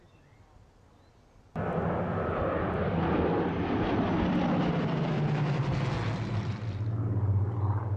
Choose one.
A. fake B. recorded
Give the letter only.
B